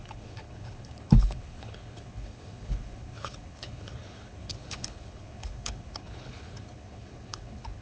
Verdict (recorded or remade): remade